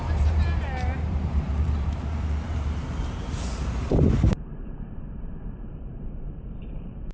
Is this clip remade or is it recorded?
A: remade